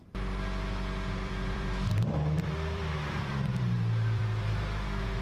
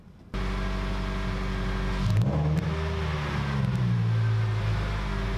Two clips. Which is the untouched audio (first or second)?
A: second